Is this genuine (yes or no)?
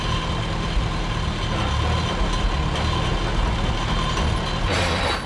yes